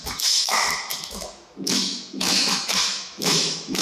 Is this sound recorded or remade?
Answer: remade